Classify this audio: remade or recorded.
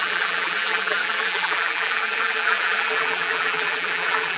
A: remade